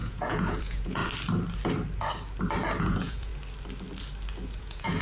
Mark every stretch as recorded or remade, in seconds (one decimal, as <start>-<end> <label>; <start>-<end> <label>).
0.0-1.0 remade; 1.0-2.8 recorded; 2.8-3.3 remade; 3.3-4.6 recorded; 4.6-5.0 remade